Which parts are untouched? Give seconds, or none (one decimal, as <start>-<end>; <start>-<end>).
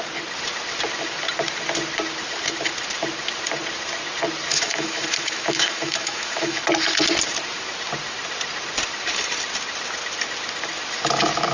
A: 0.0-4.5; 6.6-11.5